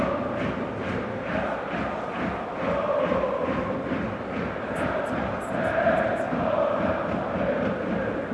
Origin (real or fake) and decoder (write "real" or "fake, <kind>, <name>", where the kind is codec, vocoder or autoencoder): real